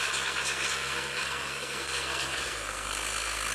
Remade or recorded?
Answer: remade